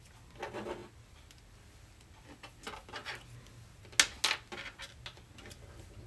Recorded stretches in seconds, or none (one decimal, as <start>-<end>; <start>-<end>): 0.0-6.1